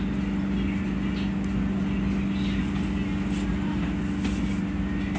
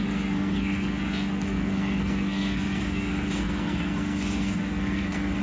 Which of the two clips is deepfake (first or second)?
second